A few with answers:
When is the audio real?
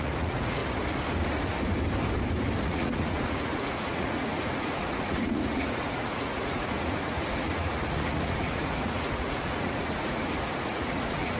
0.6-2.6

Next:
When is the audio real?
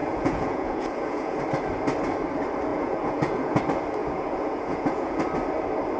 1.4-2.7; 3.6-4.0; 5.2-6.0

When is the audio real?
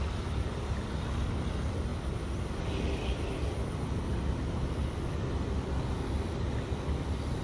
0.0-7.4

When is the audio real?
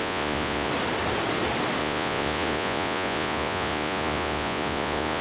0.7-1.8